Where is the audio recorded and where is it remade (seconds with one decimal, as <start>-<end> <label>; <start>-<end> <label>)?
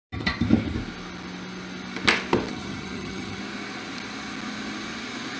0.0-2.5 recorded; 2.5-3.4 remade; 3.4-5.4 recorded